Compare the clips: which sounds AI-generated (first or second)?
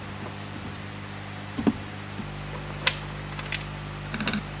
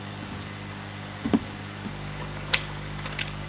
second